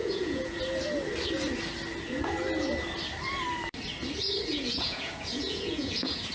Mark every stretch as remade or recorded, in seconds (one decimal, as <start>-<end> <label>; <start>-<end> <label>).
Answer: 0.0-0.6 remade; 0.6-4.5 recorded; 4.5-6.3 remade